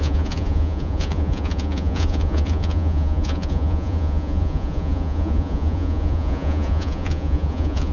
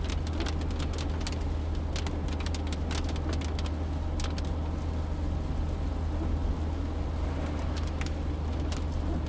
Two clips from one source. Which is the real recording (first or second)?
second